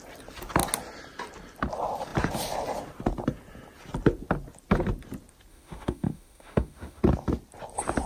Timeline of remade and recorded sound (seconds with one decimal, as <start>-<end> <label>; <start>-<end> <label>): 0.0-5.5 recorded; 5.5-7.0 remade; 7.0-8.1 recorded